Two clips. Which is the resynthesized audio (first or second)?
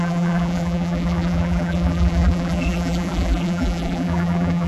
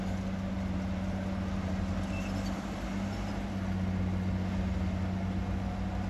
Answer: first